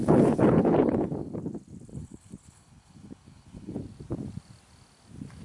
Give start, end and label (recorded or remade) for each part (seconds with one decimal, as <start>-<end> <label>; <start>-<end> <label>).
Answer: 0.0-1.1 remade; 1.1-1.9 recorded; 1.9-3.8 remade; 3.8-5.4 recorded